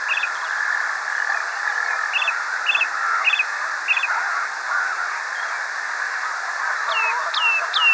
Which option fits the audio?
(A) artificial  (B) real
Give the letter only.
B